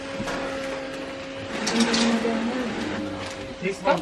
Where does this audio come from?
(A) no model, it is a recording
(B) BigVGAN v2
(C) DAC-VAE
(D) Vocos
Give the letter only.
A